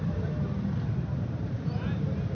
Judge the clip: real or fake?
real